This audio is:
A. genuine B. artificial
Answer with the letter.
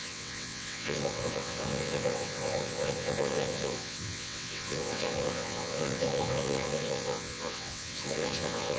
B